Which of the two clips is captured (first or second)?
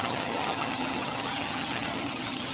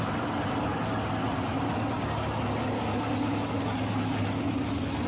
second